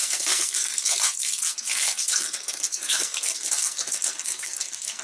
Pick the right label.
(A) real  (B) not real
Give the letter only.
B